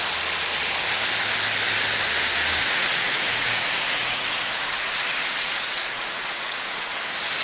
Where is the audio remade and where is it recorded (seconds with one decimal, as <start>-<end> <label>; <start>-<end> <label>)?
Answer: 0.0-2.6 recorded; 2.6-7.0 remade; 7.0-7.4 recorded